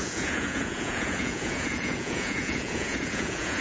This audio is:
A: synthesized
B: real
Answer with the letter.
A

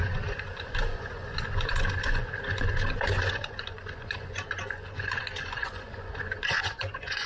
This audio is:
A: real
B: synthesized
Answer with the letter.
B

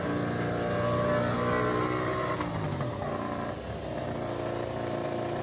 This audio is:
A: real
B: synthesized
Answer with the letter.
A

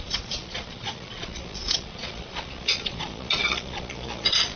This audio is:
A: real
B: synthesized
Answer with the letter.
B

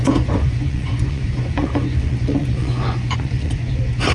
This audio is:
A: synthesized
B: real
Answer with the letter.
A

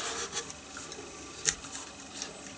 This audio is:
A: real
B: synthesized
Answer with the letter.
A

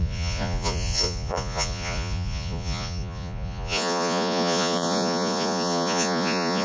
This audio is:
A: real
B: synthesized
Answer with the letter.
B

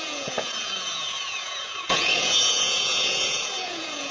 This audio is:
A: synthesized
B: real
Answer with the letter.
A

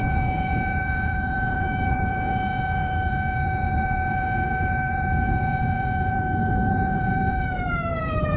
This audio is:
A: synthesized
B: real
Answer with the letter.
A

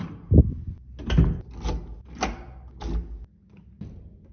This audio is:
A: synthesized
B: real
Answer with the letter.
B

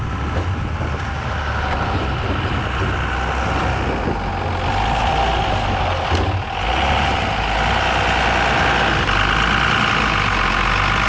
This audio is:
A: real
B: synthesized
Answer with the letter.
A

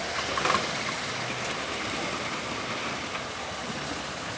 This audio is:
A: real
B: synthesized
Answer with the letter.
A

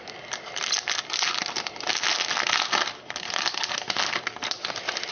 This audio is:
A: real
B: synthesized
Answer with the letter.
A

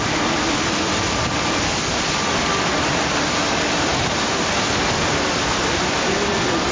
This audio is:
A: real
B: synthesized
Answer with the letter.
A